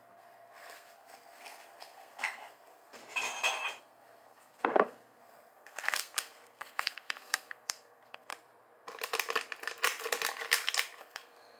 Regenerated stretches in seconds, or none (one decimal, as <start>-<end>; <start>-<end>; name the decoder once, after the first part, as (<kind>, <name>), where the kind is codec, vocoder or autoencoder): 0.0-3.0 (codec, SNAC); 3.8-8.3; 11.0-11.6